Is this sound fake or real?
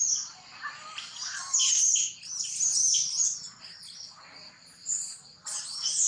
real